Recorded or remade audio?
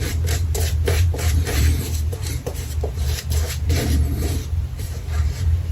remade